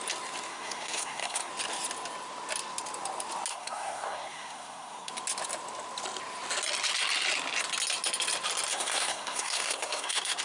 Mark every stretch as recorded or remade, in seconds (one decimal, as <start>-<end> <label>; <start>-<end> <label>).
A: 0.0-0.5 recorded; 0.5-1.5 remade; 1.5-3.5 recorded; 3.5-5.1 remade; 5.1-8.7 recorded; 8.7-10.4 remade